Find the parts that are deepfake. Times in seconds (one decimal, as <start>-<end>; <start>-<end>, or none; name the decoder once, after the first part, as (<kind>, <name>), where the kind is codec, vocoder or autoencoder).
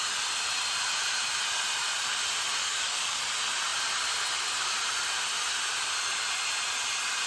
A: 2.6-3.2 (codec, DAC)